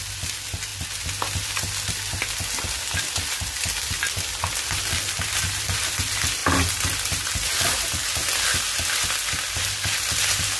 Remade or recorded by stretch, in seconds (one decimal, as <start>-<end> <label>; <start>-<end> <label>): 0.0-10.6 recorded